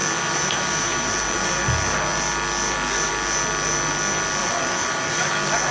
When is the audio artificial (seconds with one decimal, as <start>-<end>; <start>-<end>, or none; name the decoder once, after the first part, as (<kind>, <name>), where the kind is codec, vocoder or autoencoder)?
0.0-1.6 (vocoder, BigVGAN v2); 4.4-5.3